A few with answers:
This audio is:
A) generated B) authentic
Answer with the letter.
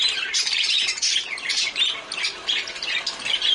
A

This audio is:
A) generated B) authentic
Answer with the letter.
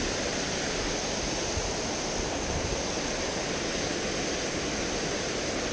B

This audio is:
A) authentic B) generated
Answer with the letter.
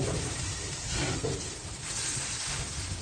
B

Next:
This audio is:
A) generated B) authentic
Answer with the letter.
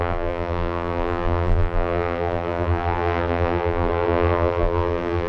A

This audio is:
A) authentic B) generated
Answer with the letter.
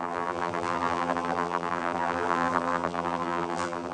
B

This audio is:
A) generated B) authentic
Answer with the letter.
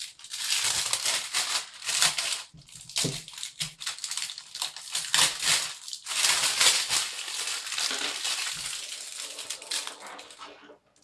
B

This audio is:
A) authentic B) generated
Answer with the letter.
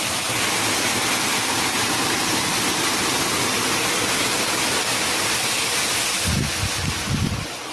A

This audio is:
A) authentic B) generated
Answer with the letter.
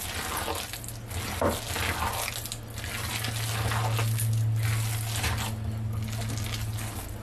A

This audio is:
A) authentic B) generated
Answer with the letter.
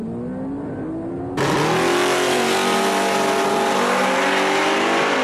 A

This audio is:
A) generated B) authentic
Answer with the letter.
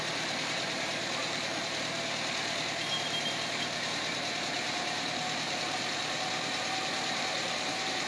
A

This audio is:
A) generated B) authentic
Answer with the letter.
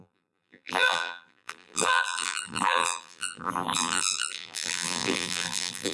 A